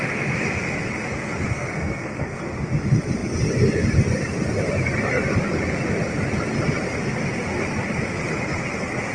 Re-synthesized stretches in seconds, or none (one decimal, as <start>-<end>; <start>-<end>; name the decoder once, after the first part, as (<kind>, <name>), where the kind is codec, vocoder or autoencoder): 1.5-2.4 (codec, SNAC)